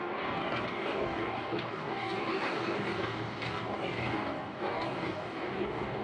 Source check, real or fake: fake